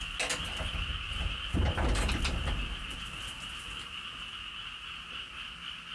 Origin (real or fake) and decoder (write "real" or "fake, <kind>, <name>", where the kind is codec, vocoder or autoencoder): real